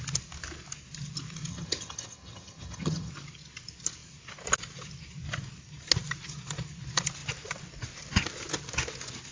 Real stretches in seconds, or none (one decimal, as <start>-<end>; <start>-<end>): 0.0-1.5; 3.1-9.3